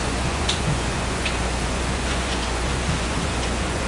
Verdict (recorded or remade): remade